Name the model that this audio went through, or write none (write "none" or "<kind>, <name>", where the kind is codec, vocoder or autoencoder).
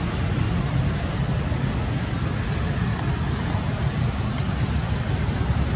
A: none